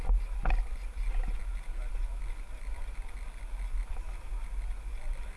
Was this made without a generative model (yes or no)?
yes